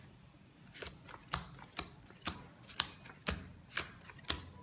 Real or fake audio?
real